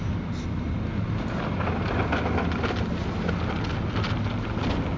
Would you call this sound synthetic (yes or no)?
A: no